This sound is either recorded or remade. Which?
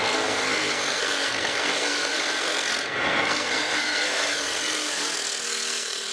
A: remade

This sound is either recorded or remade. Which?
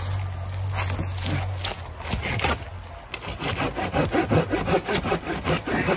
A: recorded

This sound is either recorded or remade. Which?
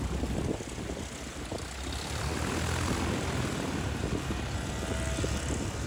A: recorded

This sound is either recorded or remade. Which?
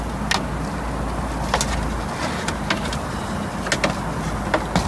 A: recorded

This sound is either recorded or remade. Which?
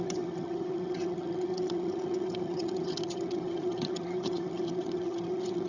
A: remade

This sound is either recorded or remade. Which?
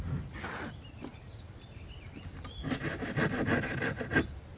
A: recorded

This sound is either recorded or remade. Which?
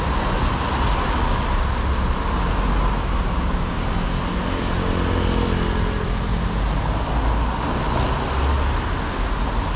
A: recorded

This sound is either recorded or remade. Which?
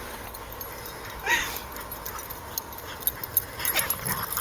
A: recorded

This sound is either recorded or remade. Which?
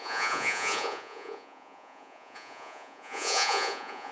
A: remade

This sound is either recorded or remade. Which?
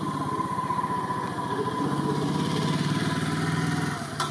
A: recorded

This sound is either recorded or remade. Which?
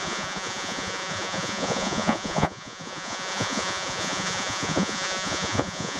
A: remade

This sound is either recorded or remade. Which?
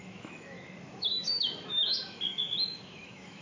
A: remade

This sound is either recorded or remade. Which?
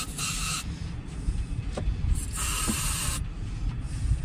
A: recorded